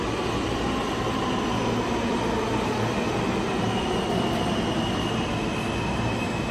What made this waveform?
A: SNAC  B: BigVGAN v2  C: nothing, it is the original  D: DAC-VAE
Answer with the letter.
C